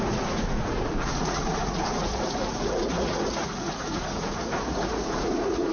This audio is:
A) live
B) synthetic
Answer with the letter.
B